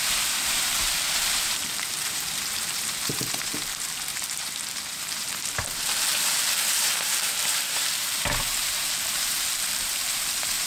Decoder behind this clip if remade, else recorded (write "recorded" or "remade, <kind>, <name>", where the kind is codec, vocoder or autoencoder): remade, vocoder, BigVGAN v2